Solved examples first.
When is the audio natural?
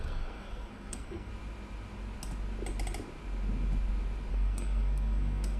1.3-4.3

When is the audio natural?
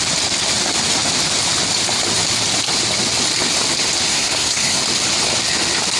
0.0-4.1; 4.8-6.0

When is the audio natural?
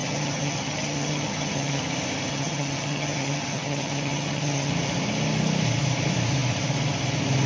1.8-2.3; 4.7-7.5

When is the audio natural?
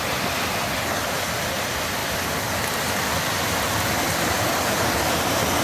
0.0-5.6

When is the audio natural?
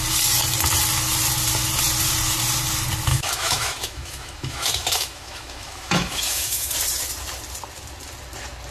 0.0-3.1; 6.7-8.7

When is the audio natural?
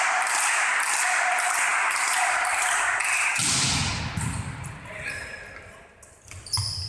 0.0-6.9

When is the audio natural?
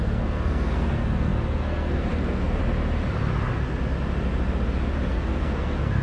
2.6-5.1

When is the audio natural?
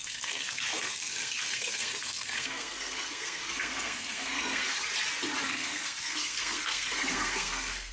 4.8-5.4